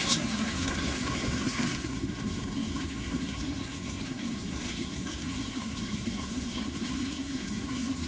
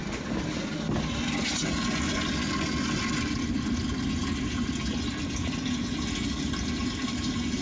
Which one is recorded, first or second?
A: second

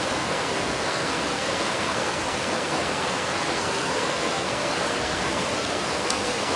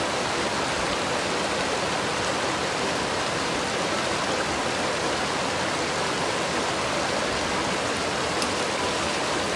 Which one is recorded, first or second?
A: second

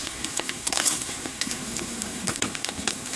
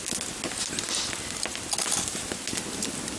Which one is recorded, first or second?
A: second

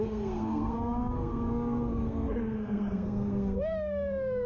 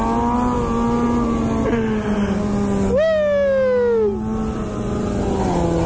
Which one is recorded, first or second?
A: second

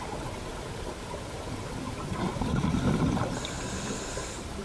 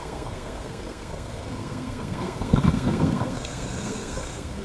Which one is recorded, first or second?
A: first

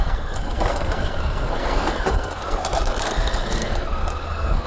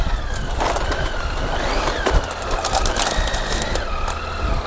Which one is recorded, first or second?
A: second